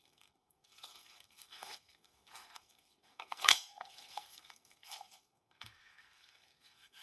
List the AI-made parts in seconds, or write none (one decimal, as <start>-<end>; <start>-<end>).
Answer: 0.0-7.0